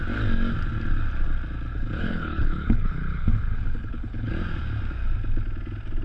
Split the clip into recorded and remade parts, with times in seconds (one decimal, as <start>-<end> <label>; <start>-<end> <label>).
0.0-1.7 recorded; 1.7-4.3 remade; 4.3-6.0 recorded